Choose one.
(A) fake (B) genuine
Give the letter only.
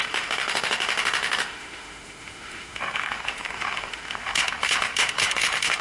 A